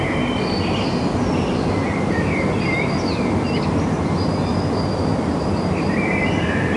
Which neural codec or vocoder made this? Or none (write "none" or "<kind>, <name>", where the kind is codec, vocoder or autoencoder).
none